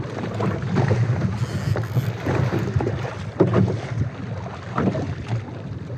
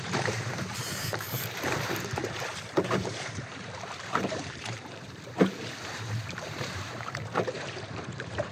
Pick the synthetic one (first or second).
second